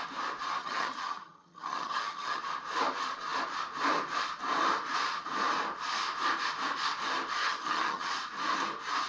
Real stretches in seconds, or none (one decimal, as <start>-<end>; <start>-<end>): 0.0-0.6; 2.4-7.4; 8.1-9.1

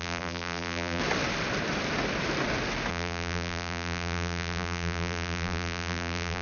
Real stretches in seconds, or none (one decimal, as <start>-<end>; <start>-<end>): 1.0-2.9

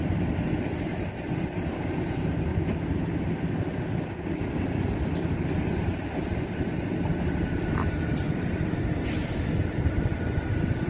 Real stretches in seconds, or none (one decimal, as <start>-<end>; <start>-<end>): 0.0-10.9

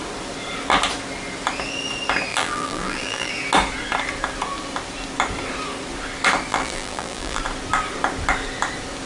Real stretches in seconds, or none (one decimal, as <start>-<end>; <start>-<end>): 0.0-2.3; 3.3-6.5; 7.4-9.1